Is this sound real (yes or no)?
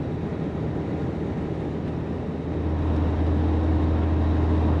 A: yes